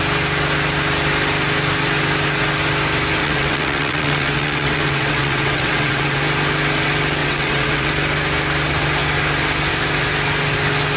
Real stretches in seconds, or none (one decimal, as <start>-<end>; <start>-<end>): 0.0-3.2; 6.2-7.2; 7.9-11.0